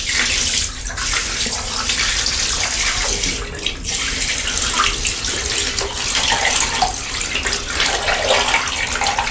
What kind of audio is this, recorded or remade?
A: recorded